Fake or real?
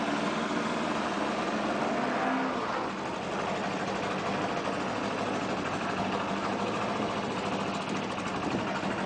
real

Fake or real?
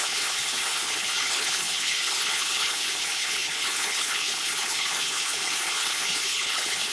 fake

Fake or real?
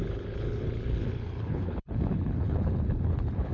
fake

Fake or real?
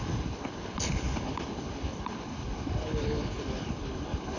fake